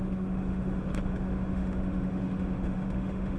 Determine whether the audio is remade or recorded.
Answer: remade